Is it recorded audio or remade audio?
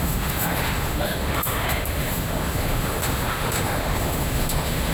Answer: remade